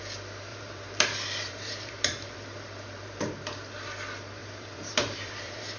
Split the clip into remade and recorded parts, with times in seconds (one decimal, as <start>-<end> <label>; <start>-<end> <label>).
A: 0.0-0.5 recorded; 0.5-3.2 remade; 3.2-4.4 recorded; 4.4-5.8 remade